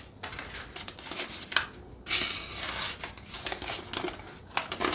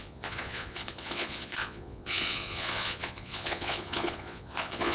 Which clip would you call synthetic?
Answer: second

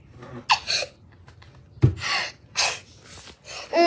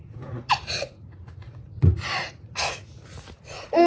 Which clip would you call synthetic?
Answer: second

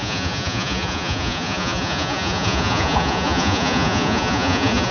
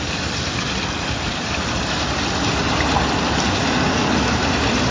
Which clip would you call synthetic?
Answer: first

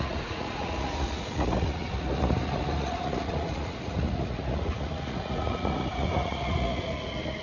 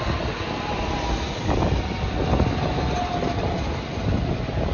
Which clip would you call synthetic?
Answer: first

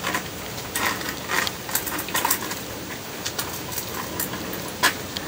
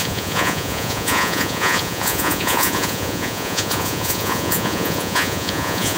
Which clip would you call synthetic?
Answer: second